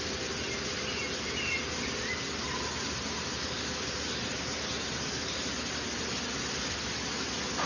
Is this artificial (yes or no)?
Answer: no